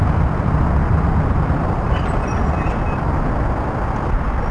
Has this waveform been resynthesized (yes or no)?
yes